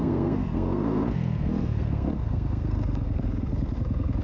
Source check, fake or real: fake